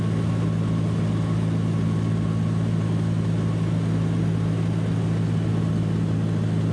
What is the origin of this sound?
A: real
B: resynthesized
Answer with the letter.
A